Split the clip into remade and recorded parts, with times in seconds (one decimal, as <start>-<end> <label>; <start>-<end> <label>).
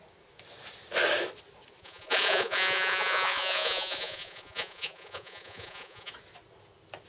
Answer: 0.0-1.8 recorded; 1.8-6.1 remade; 6.1-7.1 recorded